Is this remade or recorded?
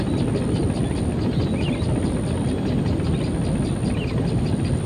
recorded